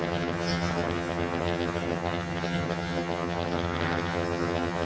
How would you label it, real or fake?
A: fake